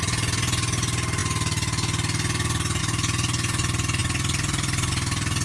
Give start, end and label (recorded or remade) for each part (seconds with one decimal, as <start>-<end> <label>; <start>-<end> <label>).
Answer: 0.0-5.4 recorded